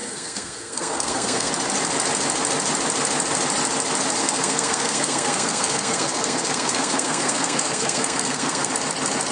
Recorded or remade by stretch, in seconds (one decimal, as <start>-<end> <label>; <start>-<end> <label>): 0.0-1.5 remade; 1.5-4.2 recorded; 4.2-8.7 remade; 8.7-9.3 recorded